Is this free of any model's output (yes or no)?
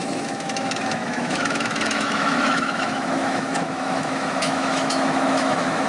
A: no